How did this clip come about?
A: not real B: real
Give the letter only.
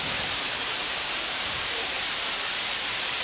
A